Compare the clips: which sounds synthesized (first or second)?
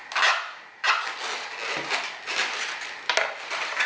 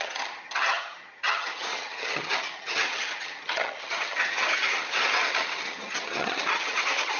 second